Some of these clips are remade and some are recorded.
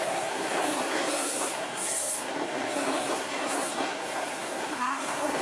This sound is remade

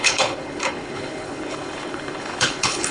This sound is remade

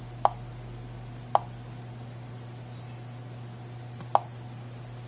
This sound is recorded